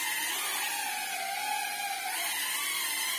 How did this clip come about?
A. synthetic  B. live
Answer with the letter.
B